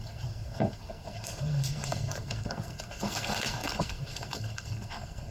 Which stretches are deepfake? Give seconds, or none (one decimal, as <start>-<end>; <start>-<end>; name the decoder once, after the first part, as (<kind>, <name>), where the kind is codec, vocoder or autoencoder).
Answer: 0.0-5.3 (codec, SNAC)